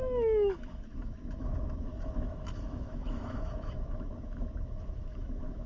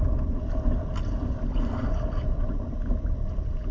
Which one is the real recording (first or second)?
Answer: second